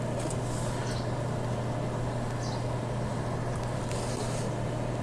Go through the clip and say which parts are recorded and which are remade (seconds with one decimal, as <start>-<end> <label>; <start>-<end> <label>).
0.0-5.0 recorded